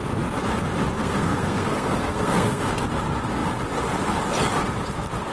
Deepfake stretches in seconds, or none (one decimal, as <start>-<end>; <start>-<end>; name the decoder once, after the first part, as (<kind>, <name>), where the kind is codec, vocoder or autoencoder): 1.0-2.6 (codec, SNAC)